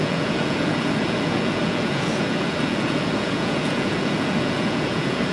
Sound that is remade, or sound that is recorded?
remade